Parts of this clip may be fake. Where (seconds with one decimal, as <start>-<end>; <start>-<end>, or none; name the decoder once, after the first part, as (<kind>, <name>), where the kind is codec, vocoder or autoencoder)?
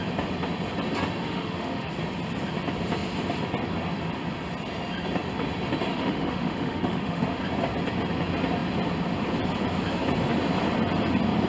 1.2-1.9 (autoencoder, DAC-VAE); 5.9-7.4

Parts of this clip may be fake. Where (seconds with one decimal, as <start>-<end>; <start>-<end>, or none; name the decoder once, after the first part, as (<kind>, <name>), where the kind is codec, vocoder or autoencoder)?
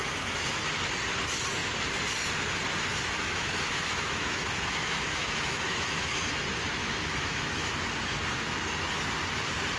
0.0-0.6 (autoencoder, DAC-VAE); 2.9-6.3; 6.8-7.7